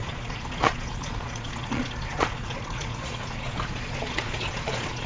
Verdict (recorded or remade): remade